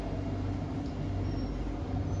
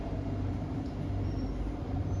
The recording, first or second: first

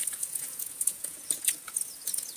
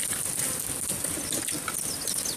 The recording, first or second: second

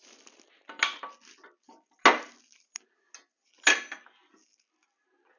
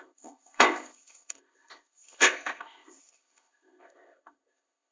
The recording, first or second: first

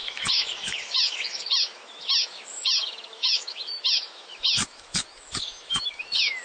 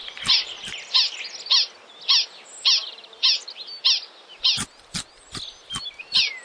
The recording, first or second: second